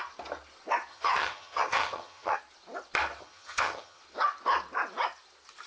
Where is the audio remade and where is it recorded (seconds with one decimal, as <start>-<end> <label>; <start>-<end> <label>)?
0.0-0.9 recorded; 0.9-2.4 remade; 2.4-3.2 recorded; 3.2-4.0 remade; 4.0-5.7 recorded